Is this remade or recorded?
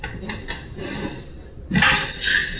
recorded